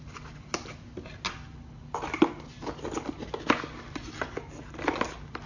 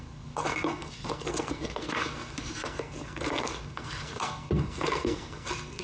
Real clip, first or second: first